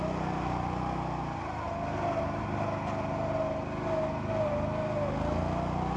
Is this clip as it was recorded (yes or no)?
yes